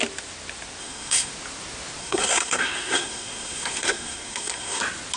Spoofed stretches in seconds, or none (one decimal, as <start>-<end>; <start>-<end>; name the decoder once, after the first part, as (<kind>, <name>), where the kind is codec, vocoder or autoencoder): 0.8-1.3 (codec, SNAC); 2.0-4.8